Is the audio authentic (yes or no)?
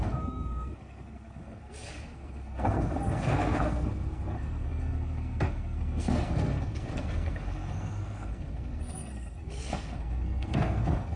no